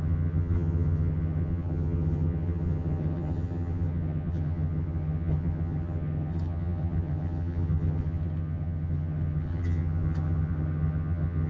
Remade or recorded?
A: remade